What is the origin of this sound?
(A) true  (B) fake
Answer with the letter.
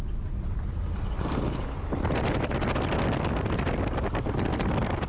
A